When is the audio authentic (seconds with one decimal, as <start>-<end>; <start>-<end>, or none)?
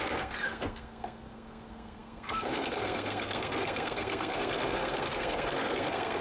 none